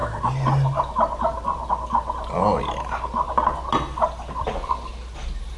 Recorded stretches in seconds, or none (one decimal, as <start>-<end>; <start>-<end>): 1.7-5.6

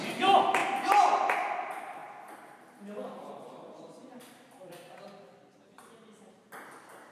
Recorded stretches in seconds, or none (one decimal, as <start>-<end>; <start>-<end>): 0.0-7.1

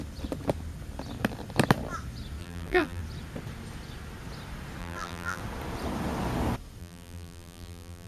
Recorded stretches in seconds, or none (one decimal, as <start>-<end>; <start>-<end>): 0.0-2.4; 3.0-4.8; 5.4-6.8

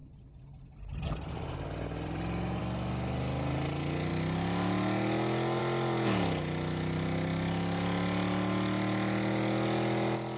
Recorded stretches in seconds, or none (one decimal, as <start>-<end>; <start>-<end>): 2.6-10.4

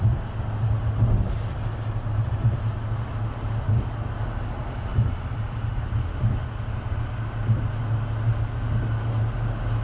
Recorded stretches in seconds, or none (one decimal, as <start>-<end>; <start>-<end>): 0.0-4.9; 6.0-9.8

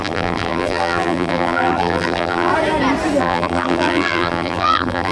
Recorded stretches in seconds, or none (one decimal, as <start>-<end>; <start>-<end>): 2.5-3.2

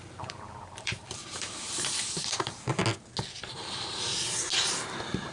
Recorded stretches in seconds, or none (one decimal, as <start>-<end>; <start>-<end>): 2.8-3.5; 4.1-5.3

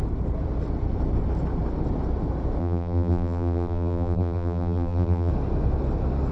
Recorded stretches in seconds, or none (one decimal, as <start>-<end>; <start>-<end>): 0.0-2.6; 5.3-6.3